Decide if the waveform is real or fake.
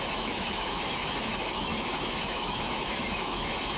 fake